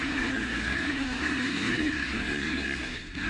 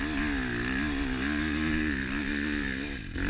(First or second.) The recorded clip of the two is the second